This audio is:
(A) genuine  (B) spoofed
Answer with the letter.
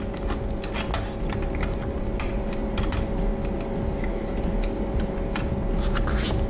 A